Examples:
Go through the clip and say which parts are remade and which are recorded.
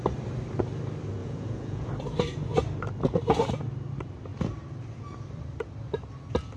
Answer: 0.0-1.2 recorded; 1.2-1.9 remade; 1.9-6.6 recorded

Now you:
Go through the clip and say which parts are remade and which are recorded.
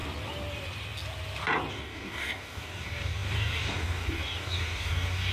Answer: 0.0-1.7 recorded; 1.7-5.3 remade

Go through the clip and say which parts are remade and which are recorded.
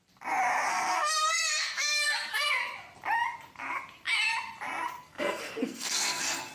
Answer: 0.0-0.7 recorded; 0.7-2.6 remade; 2.6-5.0 recorded; 5.0-6.5 remade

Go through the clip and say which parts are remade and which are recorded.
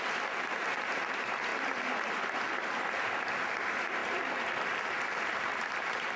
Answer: 0.0-1.5 remade; 1.5-3.6 recorded; 3.6-4.0 remade; 4.0-4.9 recorded; 4.9-6.2 remade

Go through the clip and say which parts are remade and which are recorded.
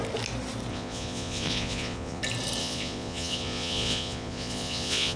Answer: 0.0-0.7 recorded; 0.7-2.2 remade; 2.2-2.6 recorded; 2.6-5.2 remade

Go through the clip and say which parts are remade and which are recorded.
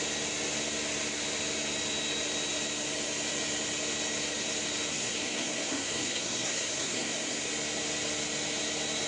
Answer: 0.0-4.9 recorded; 4.9-7.5 remade; 7.5-9.1 recorded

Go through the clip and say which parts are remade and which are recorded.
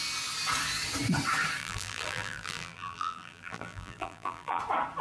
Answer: 0.0-1.6 recorded; 1.6-4.6 remade; 4.6-5.0 recorded